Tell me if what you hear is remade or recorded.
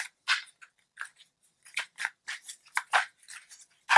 recorded